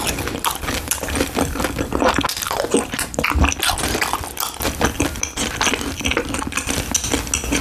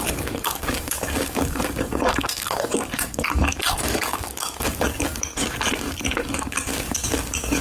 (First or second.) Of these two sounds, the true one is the first